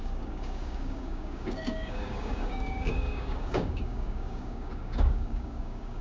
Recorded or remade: remade